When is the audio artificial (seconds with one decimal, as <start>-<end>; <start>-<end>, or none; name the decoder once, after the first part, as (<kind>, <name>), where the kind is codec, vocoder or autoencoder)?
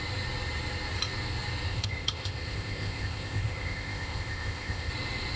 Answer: 1.7-4.9 (codec, ZipCodec)